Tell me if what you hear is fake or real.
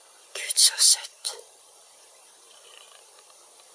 fake